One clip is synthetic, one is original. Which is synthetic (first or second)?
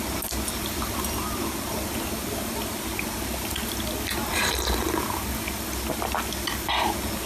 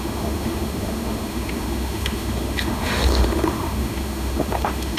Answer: second